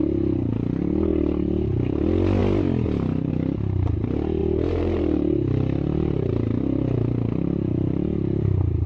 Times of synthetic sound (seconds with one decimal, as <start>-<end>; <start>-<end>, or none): 1.1-2.0; 4.4-6.6